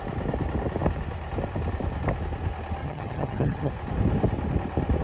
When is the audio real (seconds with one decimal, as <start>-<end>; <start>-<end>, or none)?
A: 0.0-2.8; 3.7-5.0